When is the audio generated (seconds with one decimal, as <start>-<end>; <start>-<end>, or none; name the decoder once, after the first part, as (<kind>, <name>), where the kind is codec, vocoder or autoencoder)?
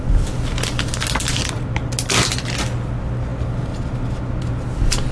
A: none